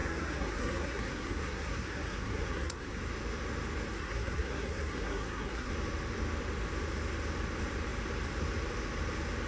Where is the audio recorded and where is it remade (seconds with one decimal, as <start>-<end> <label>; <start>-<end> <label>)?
0.0-3.0 remade; 3.0-3.9 recorded; 3.9-5.7 remade; 5.7-9.5 recorded